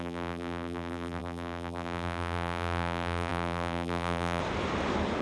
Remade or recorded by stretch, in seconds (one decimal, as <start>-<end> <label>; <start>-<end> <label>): 0.0-4.4 remade; 4.4-5.2 recorded